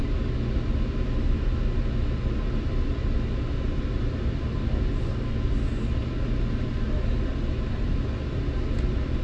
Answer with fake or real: real